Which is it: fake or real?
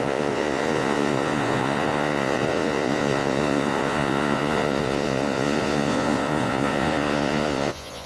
fake